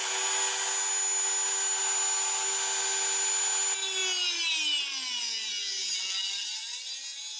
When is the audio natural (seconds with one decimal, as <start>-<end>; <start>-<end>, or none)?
0.0-7.4